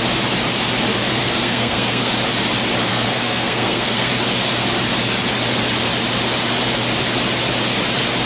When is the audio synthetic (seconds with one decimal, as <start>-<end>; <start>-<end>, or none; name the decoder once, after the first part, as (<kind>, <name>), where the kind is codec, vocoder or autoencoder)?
1.1-2.1 (codec, SNAC); 2.9-4.1